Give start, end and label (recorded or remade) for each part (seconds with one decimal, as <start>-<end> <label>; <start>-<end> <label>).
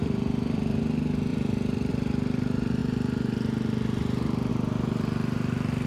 0.0-0.8 remade; 0.8-1.3 recorded; 1.3-1.9 remade; 1.9-5.9 recorded